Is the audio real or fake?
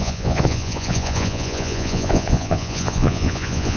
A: fake